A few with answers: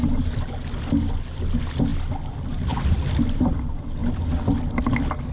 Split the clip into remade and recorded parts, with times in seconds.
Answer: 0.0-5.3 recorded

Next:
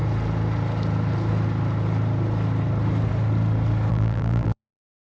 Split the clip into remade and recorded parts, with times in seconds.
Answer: 0.0-3.9 recorded; 3.9-5.1 remade